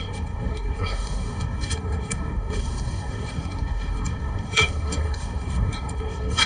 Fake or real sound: fake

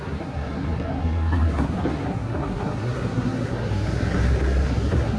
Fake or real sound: fake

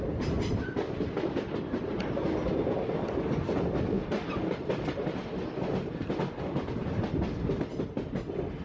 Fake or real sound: real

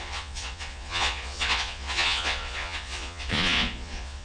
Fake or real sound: fake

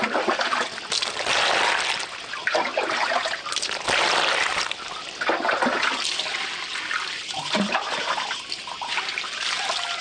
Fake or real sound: real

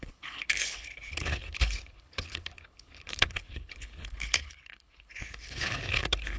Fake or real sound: fake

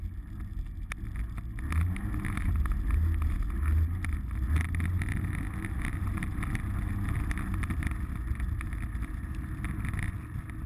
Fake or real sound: real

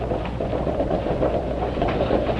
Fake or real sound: fake